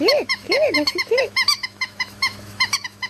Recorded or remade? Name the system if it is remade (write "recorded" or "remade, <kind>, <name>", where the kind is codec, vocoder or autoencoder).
remade, autoencoder, DAC-VAE